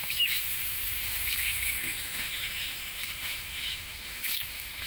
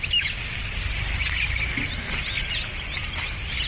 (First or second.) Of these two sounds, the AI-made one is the first